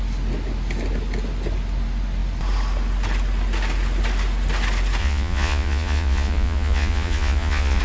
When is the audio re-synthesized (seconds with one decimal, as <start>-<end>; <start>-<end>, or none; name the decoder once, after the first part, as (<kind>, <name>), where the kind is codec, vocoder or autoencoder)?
5.0-7.8 (vocoder, Vocos)